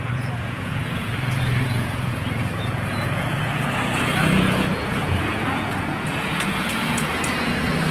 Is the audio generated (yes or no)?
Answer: yes